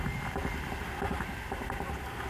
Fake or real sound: real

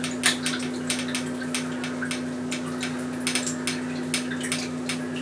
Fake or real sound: real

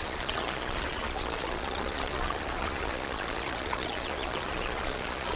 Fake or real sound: fake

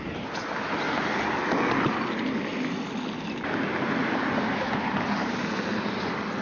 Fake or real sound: real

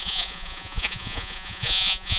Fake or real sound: fake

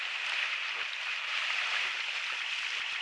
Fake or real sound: real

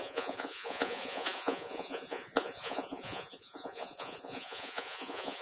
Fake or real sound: fake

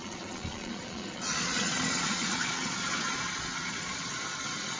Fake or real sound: fake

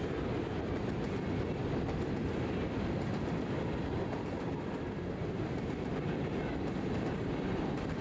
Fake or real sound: real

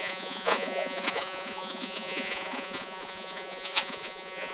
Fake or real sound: fake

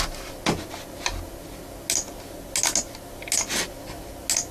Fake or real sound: real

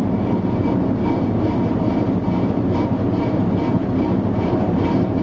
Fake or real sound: real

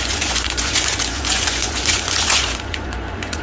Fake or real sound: fake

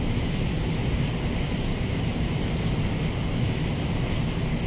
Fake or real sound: real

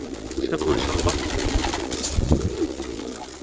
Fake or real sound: fake